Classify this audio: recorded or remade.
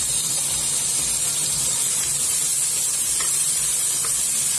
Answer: recorded